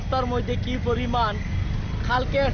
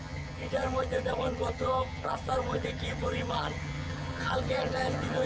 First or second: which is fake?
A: second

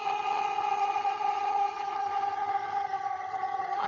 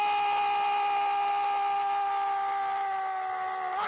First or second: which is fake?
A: first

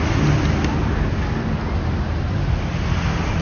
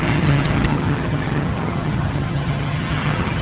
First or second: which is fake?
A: second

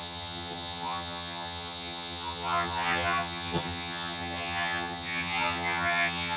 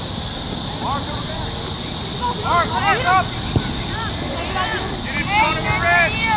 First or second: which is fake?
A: first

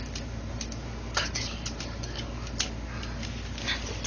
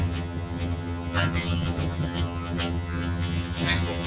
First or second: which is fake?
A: second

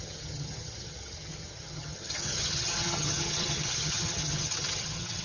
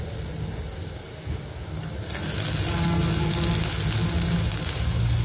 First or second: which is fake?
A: first